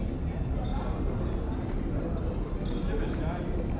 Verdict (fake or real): real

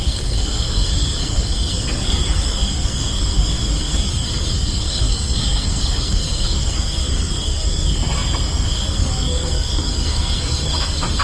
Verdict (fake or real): fake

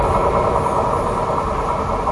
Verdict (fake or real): real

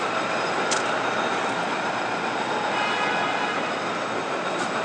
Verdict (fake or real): real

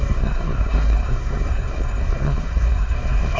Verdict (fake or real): fake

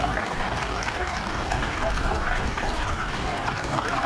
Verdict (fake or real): fake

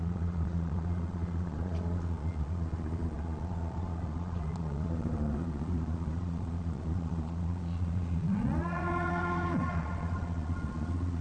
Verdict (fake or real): fake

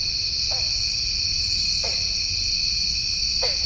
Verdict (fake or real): real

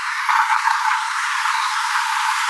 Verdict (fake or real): fake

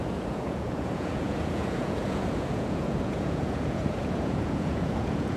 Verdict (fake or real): fake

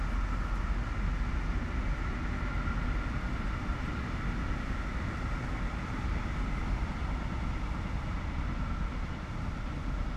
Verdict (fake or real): real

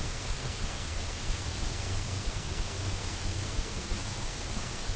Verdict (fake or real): fake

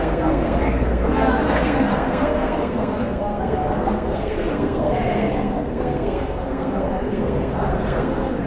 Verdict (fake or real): fake